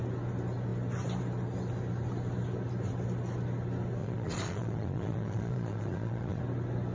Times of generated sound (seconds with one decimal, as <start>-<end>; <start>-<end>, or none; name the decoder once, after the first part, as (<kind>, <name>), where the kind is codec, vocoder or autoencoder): 4.0-6.4 (vocoder, Vocos)